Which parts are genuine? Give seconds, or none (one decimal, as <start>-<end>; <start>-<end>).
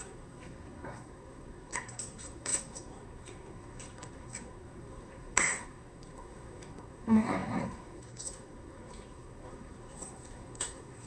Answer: none